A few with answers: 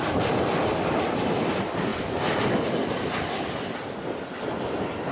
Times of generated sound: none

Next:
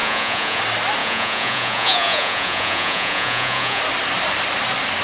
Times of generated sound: 0.0-0.6 (vocoder, Vocos); 1.0-3.8